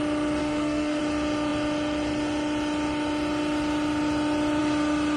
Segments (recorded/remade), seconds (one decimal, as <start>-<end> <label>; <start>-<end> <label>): 0.0-0.4 recorded; 0.4-1.0 remade; 1.0-5.2 recorded